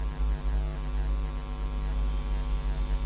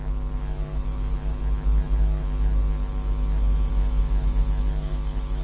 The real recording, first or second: first